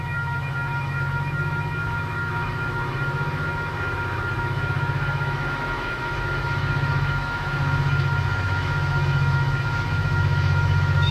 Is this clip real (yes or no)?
no